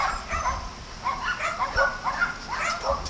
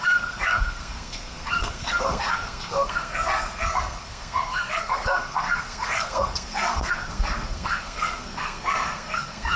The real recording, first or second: first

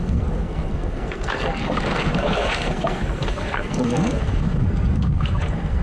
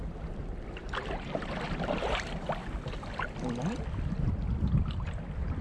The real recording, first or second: second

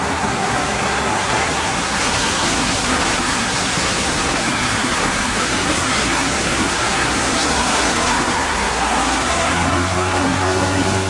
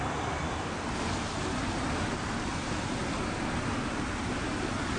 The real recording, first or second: second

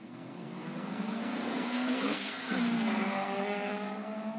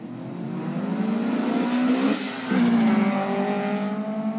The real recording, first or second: second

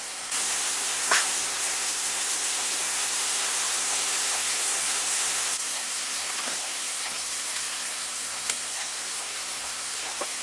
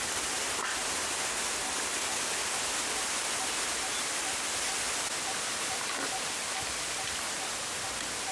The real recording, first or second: second